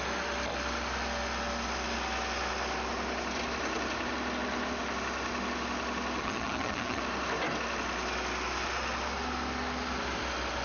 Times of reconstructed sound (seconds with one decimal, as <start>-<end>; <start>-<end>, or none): 6.2-7.0